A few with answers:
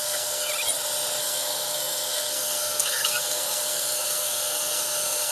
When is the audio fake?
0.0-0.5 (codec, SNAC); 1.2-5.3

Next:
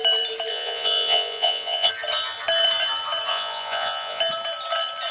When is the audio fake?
0.5-1.9 (vocoder, Vocos); 3.3-4.2